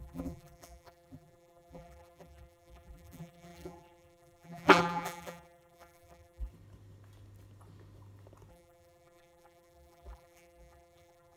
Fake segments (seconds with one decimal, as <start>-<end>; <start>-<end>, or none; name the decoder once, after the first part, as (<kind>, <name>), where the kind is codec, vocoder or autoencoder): 0.0-6.5 (vocoder, BigVGAN v2); 8.5-11.4